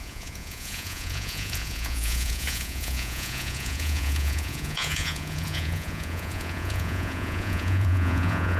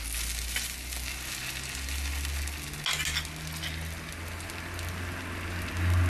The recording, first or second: second